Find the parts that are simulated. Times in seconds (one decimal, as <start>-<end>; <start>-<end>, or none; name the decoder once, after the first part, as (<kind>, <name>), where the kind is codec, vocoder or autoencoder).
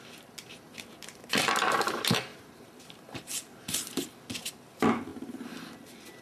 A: 2.3-4.1 (vocoder, BigVGAN v2)